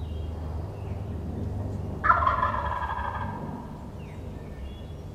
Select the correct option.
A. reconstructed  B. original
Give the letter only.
B